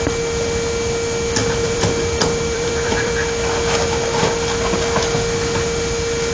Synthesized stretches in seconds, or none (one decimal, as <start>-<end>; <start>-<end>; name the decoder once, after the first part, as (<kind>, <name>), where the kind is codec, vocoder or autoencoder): 1.4-3.1 (vocoder, BigVGAN v2)